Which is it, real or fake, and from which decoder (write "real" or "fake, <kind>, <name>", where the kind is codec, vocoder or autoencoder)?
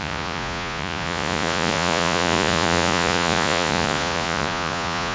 fake, vocoder, Vocos